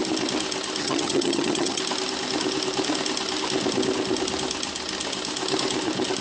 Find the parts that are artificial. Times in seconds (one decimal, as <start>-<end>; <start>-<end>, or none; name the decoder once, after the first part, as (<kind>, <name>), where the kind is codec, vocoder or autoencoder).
0.8-1.8 (vocoder, HiFi-GAN)